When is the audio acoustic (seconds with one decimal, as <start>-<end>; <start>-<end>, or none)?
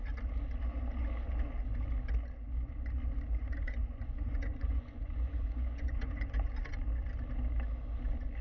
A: 0.0-3.4; 6.5-8.4